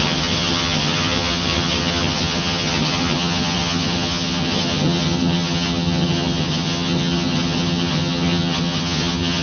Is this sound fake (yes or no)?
yes